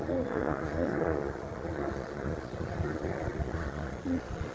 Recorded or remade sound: remade